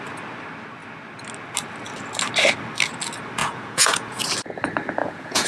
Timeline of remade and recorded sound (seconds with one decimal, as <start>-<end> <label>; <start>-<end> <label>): 0.0-3.4 recorded; 3.4-4.2 remade; 4.2-5.0 recorded; 5.0-5.5 remade